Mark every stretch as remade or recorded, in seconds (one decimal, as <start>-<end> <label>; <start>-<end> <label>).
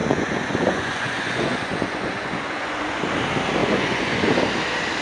0.0-3.0 remade; 3.0-3.6 recorded; 3.6-4.3 remade; 4.3-5.0 recorded